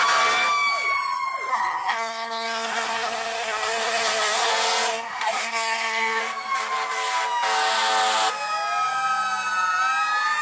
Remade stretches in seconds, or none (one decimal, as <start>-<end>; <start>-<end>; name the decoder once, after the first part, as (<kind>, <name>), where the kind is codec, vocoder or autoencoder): 1.5-4.5 (codec, SNAC); 4.9-6.2